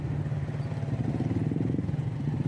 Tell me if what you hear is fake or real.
real